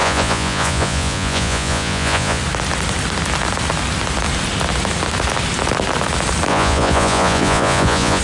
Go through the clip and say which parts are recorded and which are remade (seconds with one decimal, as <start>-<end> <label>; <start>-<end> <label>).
0.0-2.4 remade; 2.4-6.5 recorded; 6.5-8.2 remade